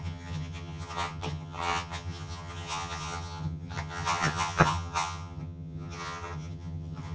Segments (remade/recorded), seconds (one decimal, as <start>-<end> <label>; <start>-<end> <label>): 0.0-7.1 remade